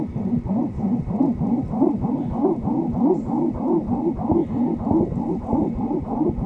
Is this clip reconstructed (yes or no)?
no